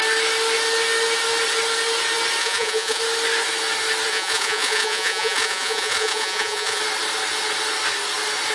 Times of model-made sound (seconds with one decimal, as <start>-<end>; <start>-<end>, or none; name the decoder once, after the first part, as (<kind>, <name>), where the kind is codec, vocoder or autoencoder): 2.4-3.0 (vocoder, Vocos); 4.1-6.8